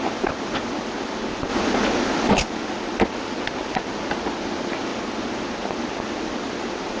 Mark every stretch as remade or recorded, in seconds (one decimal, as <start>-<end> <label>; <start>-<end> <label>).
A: 0.0-7.0 recorded